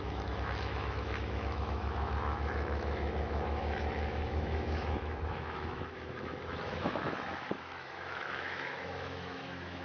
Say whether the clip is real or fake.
fake